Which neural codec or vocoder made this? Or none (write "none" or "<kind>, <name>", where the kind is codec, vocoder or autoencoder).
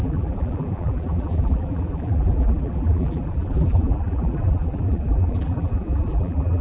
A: vocoder, BigVGAN v2